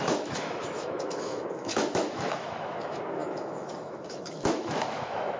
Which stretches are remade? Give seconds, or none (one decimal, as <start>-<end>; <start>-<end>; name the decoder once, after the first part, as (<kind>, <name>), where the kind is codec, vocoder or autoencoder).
0.0-5.4 (autoencoder, DAC-VAE)